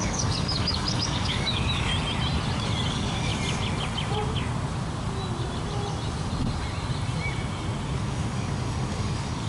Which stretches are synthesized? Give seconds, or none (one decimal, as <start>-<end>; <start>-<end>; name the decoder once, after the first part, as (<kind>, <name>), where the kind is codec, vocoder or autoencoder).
0.0-1.9 (codec, DAC); 2.9-3.3; 8.0-9.5